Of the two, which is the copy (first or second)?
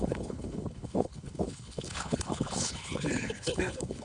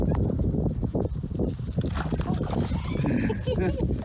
first